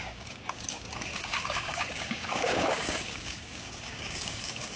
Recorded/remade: remade